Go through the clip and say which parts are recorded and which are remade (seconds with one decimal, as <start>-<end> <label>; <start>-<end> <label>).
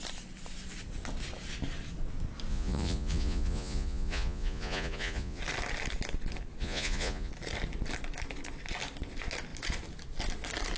0.0-2.5 recorded; 2.5-5.4 remade; 5.4-6.6 recorded; 6.6-7.3 remade; 7.3-10.8 recorded